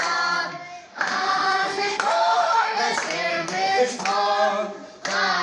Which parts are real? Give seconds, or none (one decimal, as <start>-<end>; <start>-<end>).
0.0-0.9; 2.8-3.3; 4.0-5.4